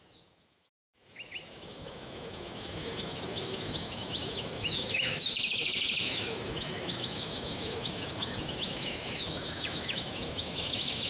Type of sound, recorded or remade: remade